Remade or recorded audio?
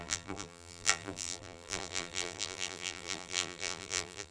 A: remade